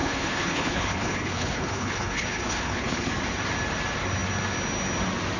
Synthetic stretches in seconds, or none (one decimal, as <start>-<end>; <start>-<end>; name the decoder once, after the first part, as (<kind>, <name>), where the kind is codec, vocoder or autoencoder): 0.0-3.1 (codec, HILCodec)